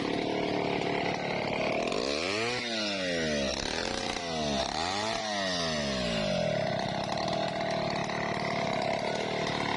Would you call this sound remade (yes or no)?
no